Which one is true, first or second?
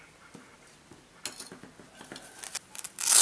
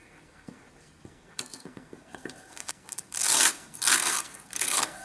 first